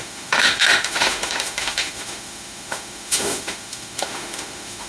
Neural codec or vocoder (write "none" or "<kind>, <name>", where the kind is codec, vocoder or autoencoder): autoencoder, DAC-VAE